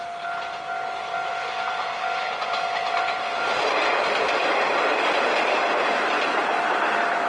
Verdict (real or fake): real